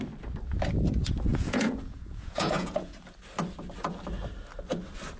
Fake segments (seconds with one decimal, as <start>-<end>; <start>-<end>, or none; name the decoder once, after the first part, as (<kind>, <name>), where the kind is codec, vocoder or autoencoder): 1.3-3.0 (vocoder, Vocos)